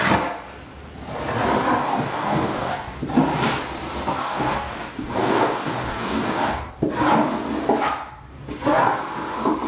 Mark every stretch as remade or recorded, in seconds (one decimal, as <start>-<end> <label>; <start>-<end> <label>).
0.0-1.8 recorded; 1.8-3.0 remade; 3.0-4.2 recorded; 4.2-6.7 remade; 6.7-9.7 recorded